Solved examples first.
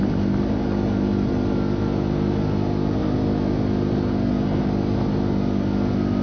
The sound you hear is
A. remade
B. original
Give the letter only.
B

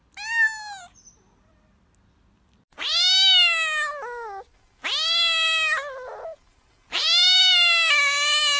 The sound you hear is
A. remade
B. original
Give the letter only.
B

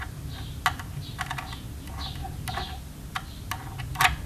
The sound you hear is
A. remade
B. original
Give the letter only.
B